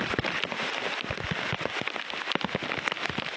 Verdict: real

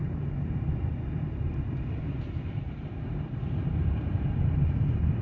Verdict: fake